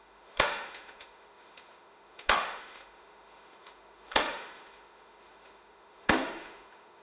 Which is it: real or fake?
fake